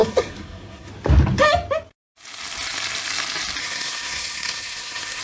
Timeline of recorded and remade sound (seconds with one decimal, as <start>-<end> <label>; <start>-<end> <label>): 0.0-0.9 remade; 0.9-3.6 recorded; 3.6-5.2 remade